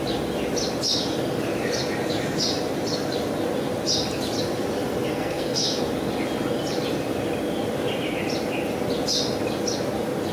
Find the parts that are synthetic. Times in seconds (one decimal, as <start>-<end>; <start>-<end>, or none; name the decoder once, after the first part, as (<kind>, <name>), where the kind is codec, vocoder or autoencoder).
5.1-5.8 (codec, SNAC)